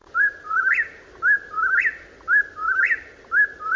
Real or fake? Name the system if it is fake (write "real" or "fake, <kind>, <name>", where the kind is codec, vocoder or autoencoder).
real